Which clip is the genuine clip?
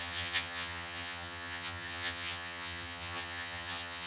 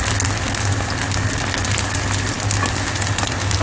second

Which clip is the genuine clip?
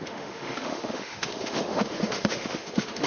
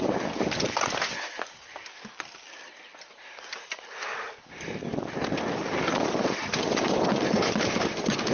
second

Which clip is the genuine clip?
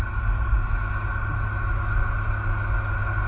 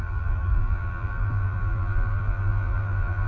first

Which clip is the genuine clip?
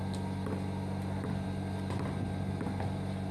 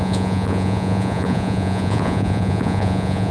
first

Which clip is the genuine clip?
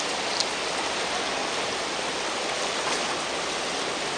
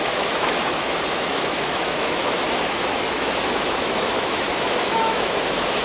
first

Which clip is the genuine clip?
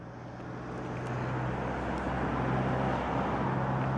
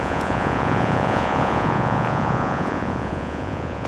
first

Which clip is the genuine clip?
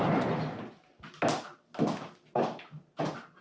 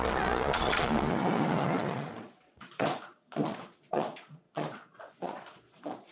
first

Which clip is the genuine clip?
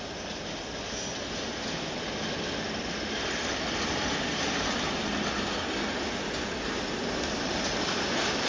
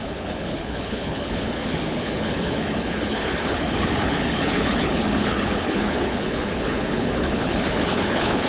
first